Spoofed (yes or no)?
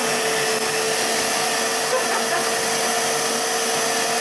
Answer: no